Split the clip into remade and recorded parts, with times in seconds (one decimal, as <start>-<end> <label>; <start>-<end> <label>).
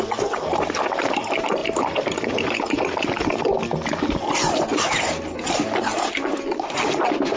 0.0-7.4 recorded